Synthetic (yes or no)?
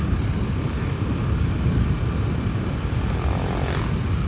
no